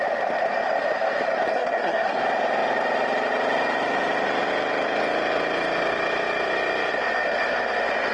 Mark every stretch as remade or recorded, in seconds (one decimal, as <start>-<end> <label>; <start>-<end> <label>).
0.0-1.5 recorded; 1.5-2.2 remade; 2.2-8.1 recorded